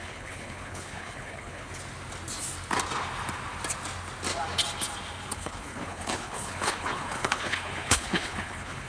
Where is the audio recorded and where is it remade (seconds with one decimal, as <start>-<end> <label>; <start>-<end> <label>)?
0.0-1.7 remade; 1.7-5.3 recorded; 5.3-8.9 remade